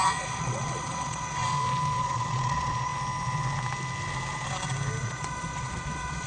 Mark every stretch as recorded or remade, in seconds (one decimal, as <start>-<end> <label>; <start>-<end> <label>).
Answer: 0.0-1.4 remade; 1.4-2.0 recorded; 2.0-2.9 remade; 2.9-5.0 recorded; 5.0-6.3 remade